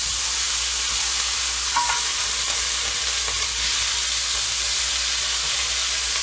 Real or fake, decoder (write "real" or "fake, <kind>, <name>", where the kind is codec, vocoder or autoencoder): real